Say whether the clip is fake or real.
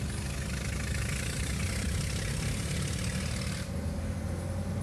real